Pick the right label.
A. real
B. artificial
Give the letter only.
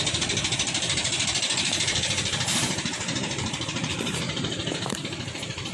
B